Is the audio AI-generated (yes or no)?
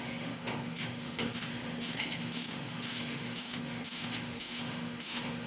yes